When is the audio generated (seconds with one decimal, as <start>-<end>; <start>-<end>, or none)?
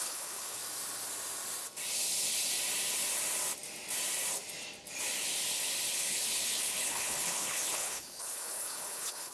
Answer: 0.0-0.6; 5.9-9.3